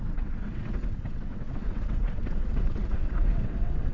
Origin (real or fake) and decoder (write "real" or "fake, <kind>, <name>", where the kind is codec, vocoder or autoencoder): fake, vocoder, WaveNeXt